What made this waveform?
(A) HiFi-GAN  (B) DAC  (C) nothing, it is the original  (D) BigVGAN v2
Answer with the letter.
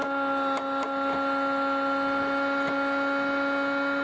C